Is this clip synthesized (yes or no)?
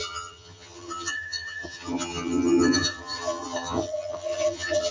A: yes